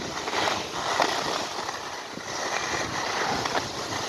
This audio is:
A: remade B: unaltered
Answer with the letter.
B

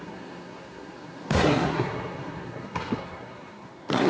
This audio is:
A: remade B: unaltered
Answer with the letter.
A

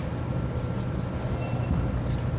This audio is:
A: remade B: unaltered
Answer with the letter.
B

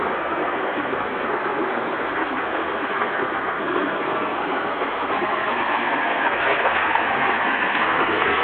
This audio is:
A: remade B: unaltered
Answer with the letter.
A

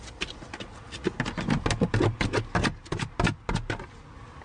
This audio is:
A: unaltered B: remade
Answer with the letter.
A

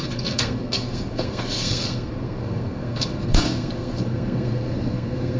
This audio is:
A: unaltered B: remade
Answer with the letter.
B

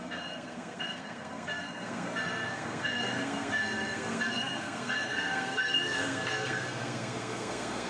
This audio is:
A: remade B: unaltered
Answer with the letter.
A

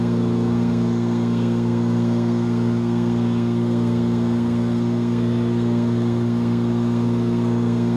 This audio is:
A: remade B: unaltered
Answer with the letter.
A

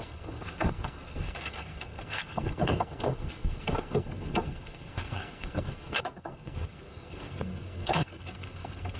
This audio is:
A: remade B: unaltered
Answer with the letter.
A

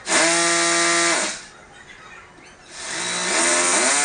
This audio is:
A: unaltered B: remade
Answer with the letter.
A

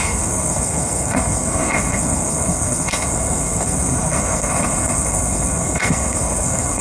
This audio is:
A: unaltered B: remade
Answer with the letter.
B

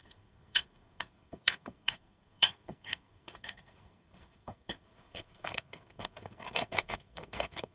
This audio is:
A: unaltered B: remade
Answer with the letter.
B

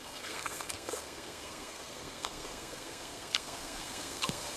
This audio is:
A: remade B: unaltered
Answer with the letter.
A